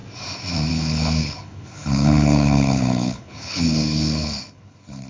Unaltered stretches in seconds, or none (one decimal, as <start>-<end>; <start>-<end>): 0.0-0.7